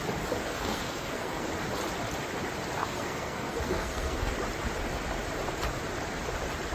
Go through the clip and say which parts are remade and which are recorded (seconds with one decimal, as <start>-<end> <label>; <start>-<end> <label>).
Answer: 0.0-0.4 recorded; 0.4-1.5 remade; 1.5-2.8 recorded; 2.8-4.3 remade; 4.3-6.7 recorded

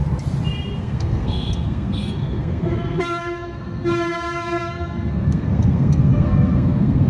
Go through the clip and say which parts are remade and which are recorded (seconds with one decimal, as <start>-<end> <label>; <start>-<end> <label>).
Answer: 0.0-0.8 recorded; 0.8-7.1 remade

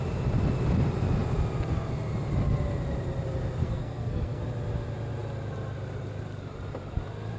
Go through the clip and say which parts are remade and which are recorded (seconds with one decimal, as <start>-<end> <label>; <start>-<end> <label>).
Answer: 0.0-3.6 recorded; 3.6-4.4 remade; 4.4-7.4 recorded

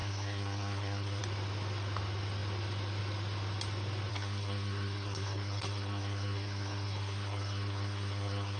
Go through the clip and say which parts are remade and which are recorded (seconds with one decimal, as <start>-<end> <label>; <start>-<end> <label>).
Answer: 0.0-1.2 remade; 1.2-4.1 recorded; 4.1-8.6 remade

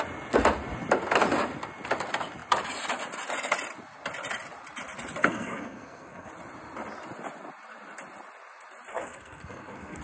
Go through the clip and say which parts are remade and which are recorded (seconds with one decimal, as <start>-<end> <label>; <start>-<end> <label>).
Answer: 0.0-5.2 recorded; 5.2-6.3 remade; 6.3-8.9 recorded; 8.9-10.0 remade

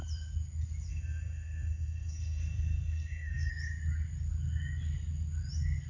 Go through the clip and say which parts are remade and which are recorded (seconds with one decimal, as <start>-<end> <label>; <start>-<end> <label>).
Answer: 0.0-0.9 recorded; 0.9-3.5 remade; 3.5-5.9 recorded

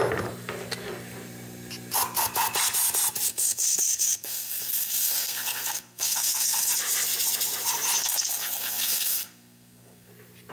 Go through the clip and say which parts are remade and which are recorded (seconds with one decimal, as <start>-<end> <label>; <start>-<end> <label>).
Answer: 0.0-3.3 recorded; 3.3-6.7 remade; 6.7-8.0 recorded; 8.0-10.1 remade; 10.1-10.5 recorded